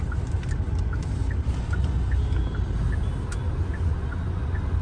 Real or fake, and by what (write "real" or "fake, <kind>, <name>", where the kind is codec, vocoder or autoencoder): real